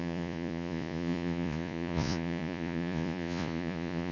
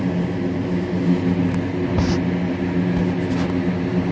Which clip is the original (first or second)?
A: second